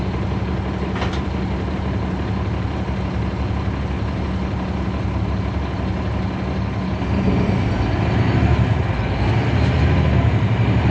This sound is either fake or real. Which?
real